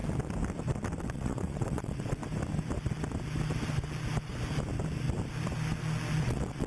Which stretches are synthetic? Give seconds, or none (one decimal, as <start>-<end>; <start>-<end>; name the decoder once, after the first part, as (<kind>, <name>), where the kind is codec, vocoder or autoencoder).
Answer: 1.0-2.2 (vocoder, WaveNeXt); 6.2-6.7